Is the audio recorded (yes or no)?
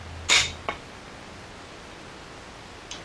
yes